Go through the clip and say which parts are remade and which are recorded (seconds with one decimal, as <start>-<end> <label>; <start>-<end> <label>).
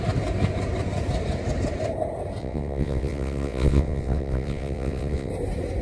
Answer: 0.0-2.4 recorded; 2.4-5.3 remade; 5.3-5.8 recorded